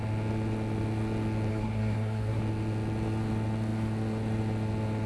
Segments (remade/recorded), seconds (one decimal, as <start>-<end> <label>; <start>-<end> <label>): 0.0-1.5 recorded; 1.5-2.4 remade; 2.4-5.1 recorded